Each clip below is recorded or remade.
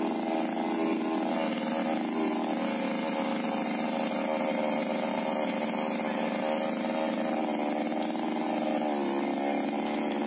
recorded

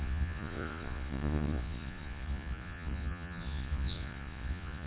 remade